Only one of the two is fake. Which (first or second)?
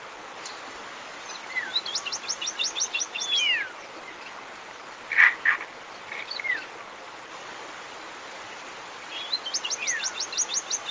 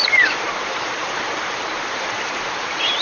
second